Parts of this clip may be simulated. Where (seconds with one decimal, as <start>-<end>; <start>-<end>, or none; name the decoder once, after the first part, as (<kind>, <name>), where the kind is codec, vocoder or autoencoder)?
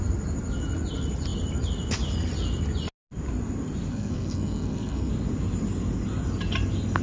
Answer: 3.9-5.1 (codec, SNAC)